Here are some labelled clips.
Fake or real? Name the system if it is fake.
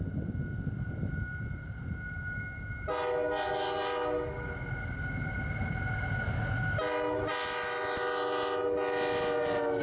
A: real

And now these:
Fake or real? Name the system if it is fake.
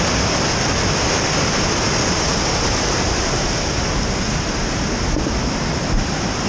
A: real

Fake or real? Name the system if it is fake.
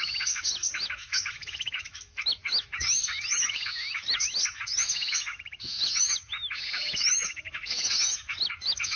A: fake, autoencoder, DAC-VAE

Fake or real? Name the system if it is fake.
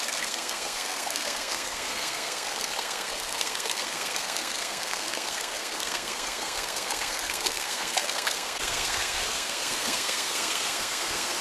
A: fake, codec, SNAC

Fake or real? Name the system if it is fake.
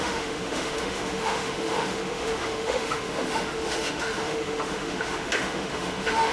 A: fake, autoencoder, DAC-VAE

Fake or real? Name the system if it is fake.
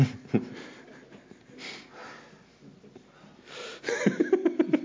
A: real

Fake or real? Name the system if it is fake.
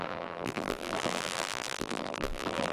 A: fake, vocoder, BigVGAN v2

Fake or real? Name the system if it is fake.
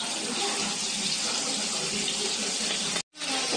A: real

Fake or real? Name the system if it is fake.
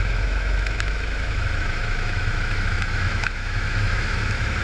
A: fake, autoencoder, DAC-VAE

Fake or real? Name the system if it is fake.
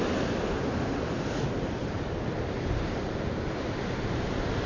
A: real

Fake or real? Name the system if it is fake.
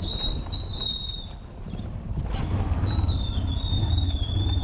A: real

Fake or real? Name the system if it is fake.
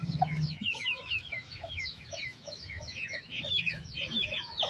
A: fake, autoencoder, DAC-VAE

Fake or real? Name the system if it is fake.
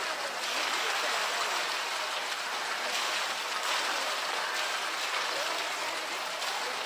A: real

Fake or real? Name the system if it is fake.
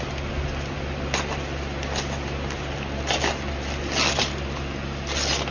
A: real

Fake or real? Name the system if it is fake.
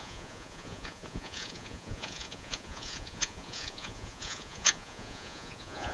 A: fake, vocoder, Vocos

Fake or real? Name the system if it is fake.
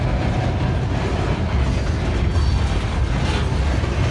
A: real